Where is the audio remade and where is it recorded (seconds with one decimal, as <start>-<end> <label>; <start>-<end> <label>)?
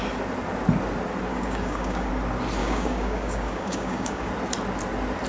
0.0-1.3 recorded; 1.3-2.1 remade; 2.1-2.6 recorded; 2.6-4.3 remade; 4.3-5.3 recorded